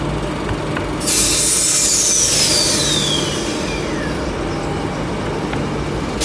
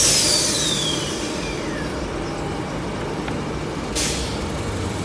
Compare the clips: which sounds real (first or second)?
first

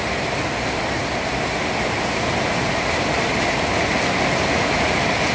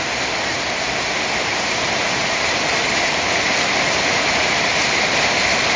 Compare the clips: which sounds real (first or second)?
first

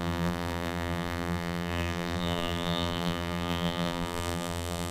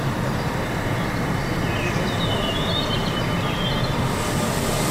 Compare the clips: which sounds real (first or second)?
second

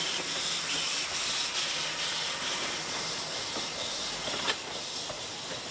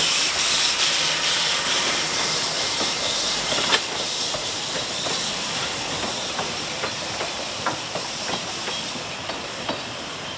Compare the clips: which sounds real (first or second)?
first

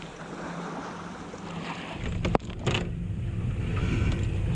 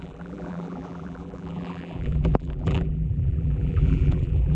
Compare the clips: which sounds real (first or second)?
first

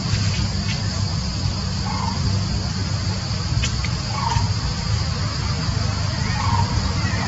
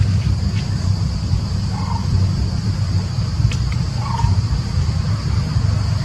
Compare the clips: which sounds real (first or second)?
first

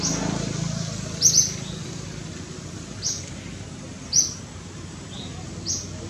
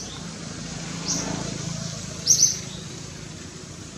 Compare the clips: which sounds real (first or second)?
first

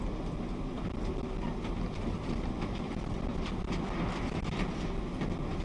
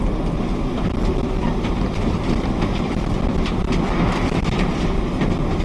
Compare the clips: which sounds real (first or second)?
first